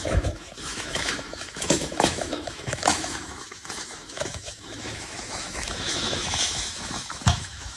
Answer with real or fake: fake